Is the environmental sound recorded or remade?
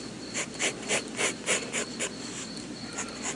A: recorded